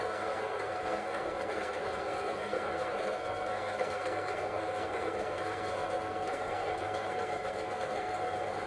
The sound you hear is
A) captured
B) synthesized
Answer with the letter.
B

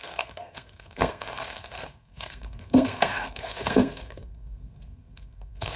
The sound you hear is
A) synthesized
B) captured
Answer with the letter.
A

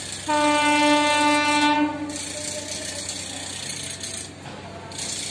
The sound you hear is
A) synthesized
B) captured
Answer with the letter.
B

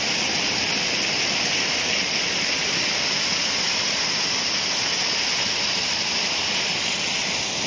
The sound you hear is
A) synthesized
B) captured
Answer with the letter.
B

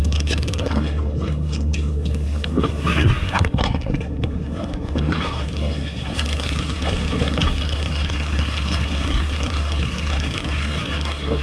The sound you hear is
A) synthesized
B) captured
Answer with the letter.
A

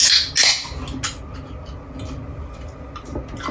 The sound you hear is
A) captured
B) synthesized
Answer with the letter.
A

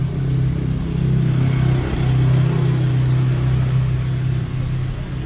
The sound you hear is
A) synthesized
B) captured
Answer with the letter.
B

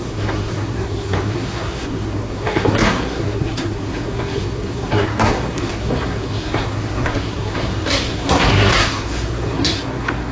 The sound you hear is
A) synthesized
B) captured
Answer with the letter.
A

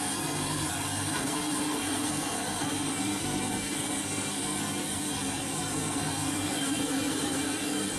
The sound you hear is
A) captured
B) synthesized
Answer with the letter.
B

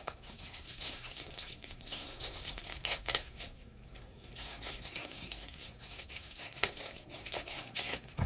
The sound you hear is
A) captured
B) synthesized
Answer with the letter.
B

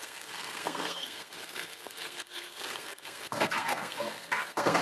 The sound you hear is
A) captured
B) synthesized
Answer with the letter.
B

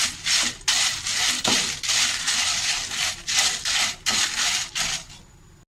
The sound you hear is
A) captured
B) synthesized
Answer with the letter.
A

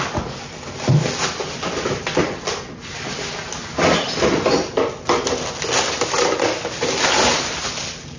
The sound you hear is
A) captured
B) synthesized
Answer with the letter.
A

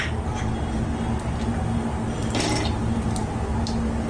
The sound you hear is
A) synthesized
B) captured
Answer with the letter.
B